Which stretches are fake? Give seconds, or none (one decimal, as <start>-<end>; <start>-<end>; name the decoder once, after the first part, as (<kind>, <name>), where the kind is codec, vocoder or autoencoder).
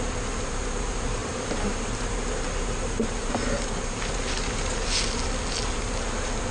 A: 1.2-3.3 (vocoder, BigVGAN v2)